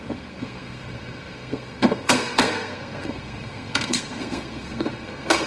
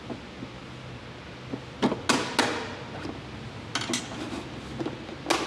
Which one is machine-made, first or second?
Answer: first